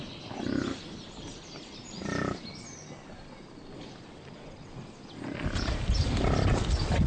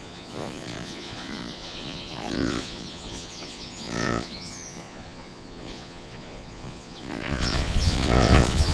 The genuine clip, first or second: first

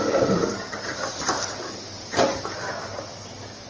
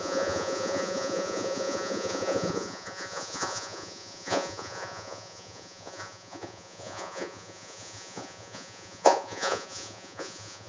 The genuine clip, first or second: first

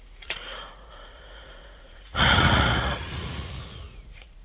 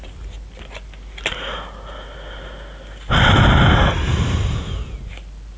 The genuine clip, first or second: second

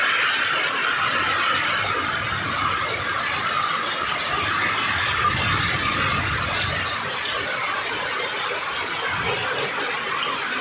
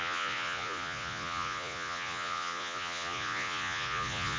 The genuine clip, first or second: first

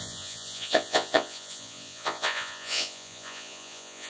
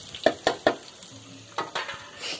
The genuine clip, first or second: second